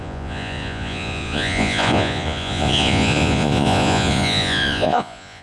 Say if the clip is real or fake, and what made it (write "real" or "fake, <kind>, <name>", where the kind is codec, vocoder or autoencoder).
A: fake, vocoder, Vocos